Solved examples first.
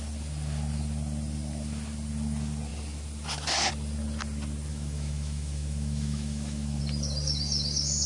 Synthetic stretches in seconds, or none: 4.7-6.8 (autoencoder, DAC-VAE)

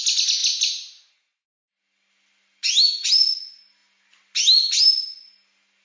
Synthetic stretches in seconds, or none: none

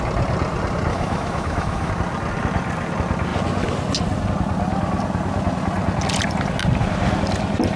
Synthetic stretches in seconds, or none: 0.9-1.9 (autoencoder, DAC-VAE)

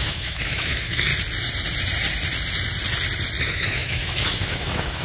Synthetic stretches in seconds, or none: 0.0-1.1 (autoencoder, DAC-VAE); 3.4-5.0

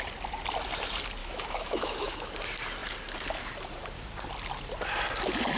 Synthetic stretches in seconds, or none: 1.2-2.3 (autoencoder, DAC-VAE)

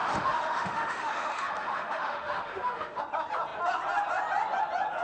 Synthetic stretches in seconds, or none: 0.0-3.0 (autoencoder, DAC-VAE)